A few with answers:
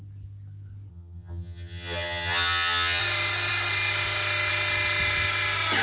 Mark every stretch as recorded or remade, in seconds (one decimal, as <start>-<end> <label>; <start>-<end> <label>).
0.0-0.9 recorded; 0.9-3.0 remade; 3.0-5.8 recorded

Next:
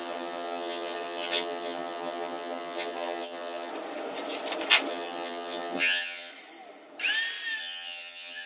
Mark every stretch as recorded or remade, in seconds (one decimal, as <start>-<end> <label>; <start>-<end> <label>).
0.0-3.7 remade; 3.7-4.9 recorded; 4.9-6.3 remade; 6.3-7.6 recorded; 7.6-8.5 remade

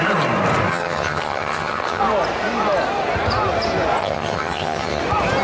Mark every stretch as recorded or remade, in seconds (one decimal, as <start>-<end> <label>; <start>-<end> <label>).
0.0-0.7 recorded; 0.7-2.0 remade; 2.0-4.0 recorded; 4.0-5.0 remade; 5.0-5.4 recorded